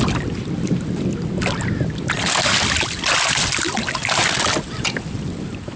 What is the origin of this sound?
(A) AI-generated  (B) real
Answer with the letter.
B